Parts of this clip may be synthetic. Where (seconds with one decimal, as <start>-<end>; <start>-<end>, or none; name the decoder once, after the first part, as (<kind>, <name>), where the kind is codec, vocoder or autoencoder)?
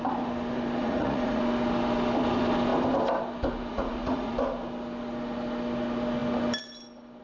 0.8-1.4 (vocoder, Vocos); 3.7-4.3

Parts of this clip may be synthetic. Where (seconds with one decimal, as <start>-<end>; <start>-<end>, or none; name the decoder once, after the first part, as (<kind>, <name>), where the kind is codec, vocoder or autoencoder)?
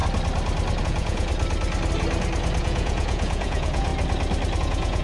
0.8-1.3 (vocoder, Vocos); 2.6-3.9; 4.6-5.0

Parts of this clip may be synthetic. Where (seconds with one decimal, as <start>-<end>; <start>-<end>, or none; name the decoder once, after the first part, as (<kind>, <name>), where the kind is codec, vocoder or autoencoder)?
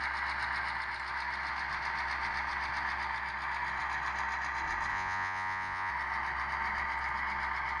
4.9-5.9 (vocoder, Vocos)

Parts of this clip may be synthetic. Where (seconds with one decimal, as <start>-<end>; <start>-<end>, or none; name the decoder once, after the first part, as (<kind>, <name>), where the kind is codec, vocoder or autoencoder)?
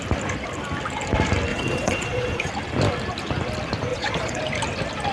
1.5-2.5 (vocoder, Vocos); 3.9-4.4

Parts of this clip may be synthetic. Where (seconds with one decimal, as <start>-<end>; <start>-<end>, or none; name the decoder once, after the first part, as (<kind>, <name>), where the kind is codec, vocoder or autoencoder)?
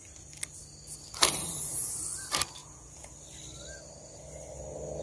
2.6-3.1 (vocoder, Vocos)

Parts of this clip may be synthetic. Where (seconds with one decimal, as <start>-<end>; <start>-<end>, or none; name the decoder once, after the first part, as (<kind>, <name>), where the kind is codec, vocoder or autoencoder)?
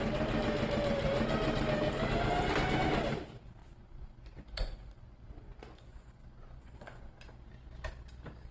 3.6-7.3 (vocoder, Vocos)